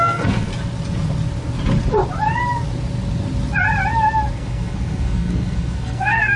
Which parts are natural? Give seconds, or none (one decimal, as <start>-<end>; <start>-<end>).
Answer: 0.5-4.3